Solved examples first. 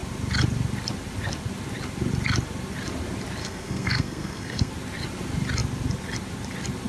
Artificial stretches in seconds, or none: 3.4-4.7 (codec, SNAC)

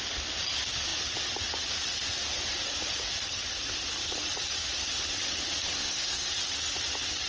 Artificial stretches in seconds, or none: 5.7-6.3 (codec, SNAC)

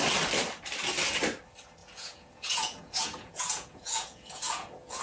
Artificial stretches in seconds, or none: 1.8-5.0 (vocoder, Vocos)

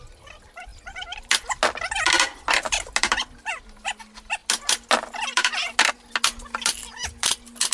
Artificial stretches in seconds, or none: none

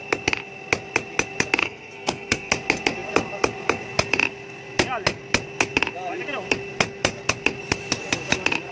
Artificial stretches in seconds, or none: 1.6-2.5 (codec, SNAC)

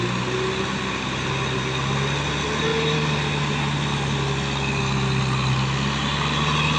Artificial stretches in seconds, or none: none

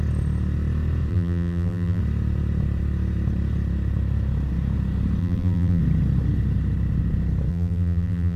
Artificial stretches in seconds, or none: 1.1-2.0 (vocoder, BigVGAN v2); 5.2-5.8; 7.5-8.4